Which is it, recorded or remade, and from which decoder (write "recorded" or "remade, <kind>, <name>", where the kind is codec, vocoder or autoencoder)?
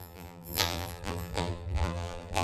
remade, vocoder, BigVGAN v2